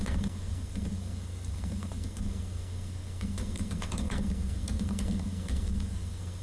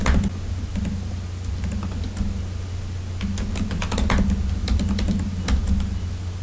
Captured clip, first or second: second